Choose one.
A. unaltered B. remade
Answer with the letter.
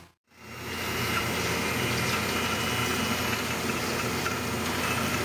A